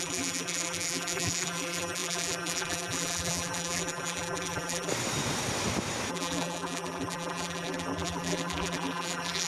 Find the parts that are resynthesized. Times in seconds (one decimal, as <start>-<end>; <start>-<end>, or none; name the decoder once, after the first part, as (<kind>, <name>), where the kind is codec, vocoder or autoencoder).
0.0-4.9 (vocoder, BigVGAN v2); 6.1-9.5